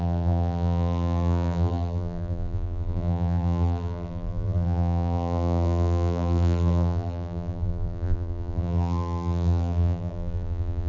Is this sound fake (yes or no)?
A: yes